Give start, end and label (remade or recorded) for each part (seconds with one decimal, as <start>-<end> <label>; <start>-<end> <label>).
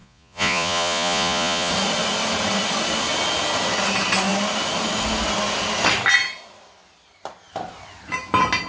0.0-1.7 remade; 1.7-8.7 recorded